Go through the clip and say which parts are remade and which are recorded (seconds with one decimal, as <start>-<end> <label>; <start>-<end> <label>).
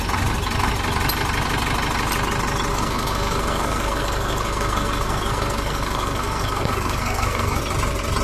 0.0-2.7 recorded; 2.7-7.6 remade; 7.6-8.2 recorded